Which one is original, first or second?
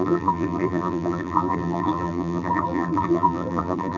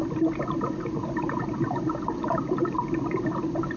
second